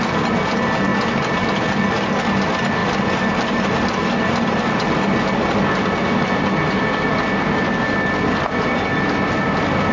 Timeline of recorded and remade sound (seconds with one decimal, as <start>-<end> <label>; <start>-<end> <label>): 0.0-2.8 recorded; 2.8-4.7 remade; 4.7-9.9 recorded